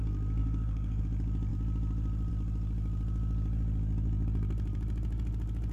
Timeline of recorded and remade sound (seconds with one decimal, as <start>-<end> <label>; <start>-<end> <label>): 0.0-0.4 recorded; 0.4-1.0 remade; 1.0-5.7 recorded